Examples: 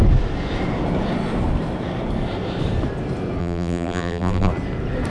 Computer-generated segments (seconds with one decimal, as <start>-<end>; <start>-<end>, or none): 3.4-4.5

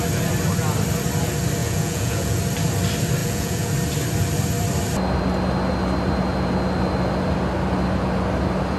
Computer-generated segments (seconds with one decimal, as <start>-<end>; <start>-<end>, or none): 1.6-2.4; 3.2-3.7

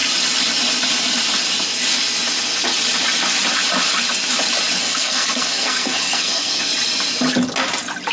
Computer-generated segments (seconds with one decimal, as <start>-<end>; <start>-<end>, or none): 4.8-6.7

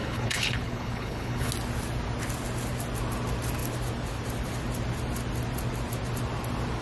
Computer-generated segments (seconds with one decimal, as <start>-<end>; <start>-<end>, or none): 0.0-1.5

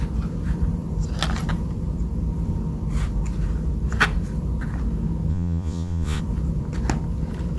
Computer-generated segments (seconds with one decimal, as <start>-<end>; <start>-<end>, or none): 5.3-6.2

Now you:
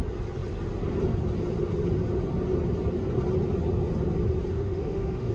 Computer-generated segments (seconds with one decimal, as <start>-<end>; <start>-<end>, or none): 4.5-5.3